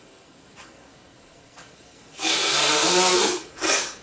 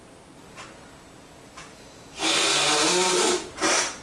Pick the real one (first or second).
second